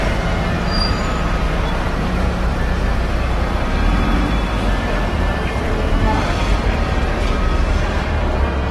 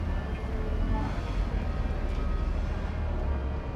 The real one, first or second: second